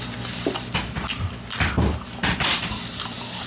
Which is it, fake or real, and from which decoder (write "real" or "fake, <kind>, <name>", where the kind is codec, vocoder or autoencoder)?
real